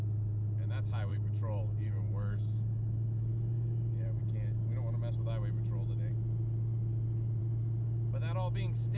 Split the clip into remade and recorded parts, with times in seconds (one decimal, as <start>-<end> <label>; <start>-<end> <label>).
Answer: 0.0-1.1 recorded; 1.1-4.2 remade; 4.2-9.0 recorded